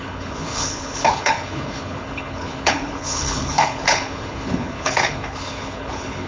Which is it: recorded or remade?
remade